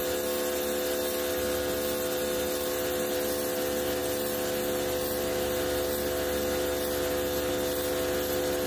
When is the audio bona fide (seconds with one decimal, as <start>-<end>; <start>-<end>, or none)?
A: 0.0-8.7

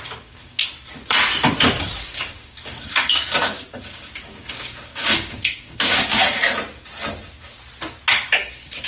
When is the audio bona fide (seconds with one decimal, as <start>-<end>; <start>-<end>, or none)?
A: 0.6-1.8; 6.4-8.1

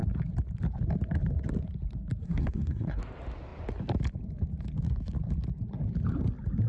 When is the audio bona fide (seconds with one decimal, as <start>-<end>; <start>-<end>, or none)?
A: 0.0-2.2; 3.0-6.7

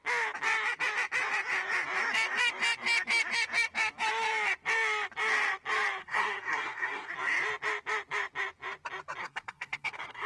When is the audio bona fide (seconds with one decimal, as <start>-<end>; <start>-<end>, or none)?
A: 0.0-6.0; 7.1-9.2

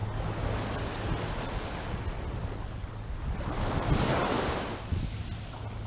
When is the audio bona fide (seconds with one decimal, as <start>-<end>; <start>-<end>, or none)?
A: 0.0-5.9

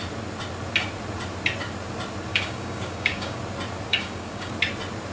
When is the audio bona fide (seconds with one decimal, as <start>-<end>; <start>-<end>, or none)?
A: 0.0-2.3; 3.4-3.9; 4.5-5.1

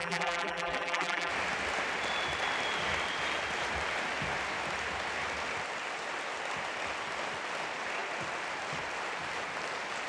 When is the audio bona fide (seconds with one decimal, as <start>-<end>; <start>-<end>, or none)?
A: 1.3-10.1